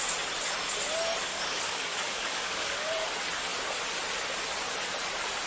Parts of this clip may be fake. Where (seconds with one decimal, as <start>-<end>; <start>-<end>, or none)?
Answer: 1.3-2.9